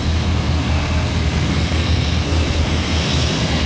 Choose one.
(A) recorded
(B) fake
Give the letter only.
B